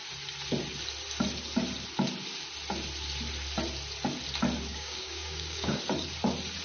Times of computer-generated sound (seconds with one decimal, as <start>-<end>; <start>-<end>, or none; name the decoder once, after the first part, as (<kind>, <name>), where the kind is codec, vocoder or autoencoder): 4.7-5.8 (codec, DAC)